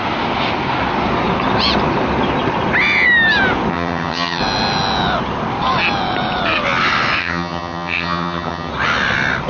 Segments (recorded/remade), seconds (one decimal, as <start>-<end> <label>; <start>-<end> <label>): 0.0-3.7 recorded; 3.7-4.4 remade; 4.4-7.2 recorded; 7.2-8.7 remade; 8.7-9.5 recorded